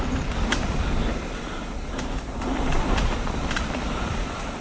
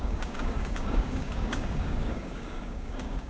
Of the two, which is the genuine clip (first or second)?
first